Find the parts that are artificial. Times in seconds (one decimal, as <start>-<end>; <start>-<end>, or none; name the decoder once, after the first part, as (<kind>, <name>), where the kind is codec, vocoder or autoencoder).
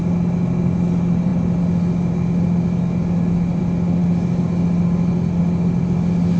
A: none